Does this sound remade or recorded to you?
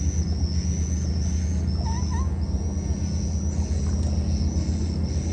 recorded